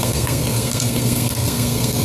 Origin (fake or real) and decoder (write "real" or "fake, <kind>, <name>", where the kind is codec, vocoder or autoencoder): fake, codec, SNAC